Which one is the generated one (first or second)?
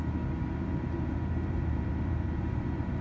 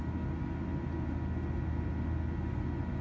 first